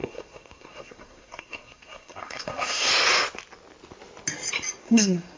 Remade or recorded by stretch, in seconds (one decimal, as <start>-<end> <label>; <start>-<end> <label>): 0.0-2.9 remade; 2.9-4.8 recorded; 4.8-5.4 remade